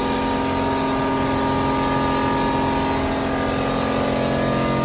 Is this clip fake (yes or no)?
no